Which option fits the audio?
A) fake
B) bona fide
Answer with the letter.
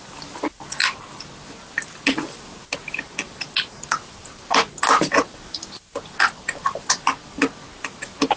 B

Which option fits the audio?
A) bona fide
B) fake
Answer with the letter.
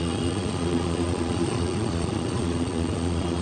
B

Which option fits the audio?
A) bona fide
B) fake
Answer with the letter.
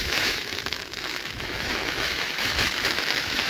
B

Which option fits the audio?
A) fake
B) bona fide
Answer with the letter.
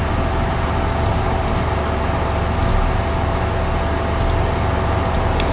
B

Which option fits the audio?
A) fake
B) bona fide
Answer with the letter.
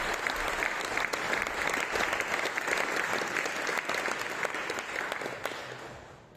B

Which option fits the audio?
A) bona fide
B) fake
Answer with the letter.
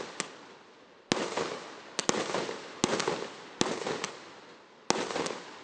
A